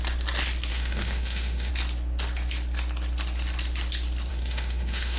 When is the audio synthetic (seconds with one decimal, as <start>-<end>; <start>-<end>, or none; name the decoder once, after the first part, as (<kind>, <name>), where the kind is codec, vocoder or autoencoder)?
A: 0.7-1.7 (autoencoder, DAC-VAE); 4.3-5.2